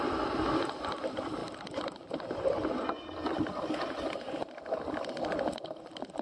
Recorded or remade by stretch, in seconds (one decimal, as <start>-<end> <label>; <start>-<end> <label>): 0.0-6.2 recorded